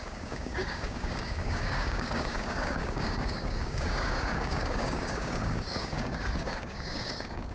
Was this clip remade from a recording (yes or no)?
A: yes